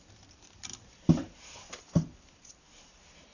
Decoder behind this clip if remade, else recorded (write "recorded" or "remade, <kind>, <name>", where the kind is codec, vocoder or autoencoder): recorded